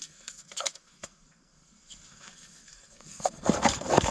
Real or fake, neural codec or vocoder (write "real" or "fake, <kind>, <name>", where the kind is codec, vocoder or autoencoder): fake, codec, SNAC